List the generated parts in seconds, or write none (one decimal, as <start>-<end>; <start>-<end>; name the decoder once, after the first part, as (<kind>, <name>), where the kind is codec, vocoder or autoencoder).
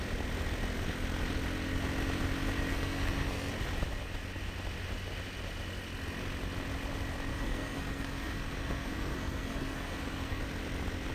2.7-3.5 (codec, SNAC); 7.3-10.4